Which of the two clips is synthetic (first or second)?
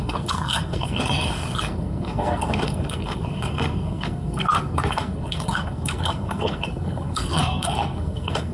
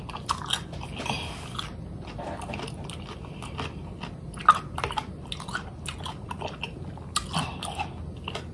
first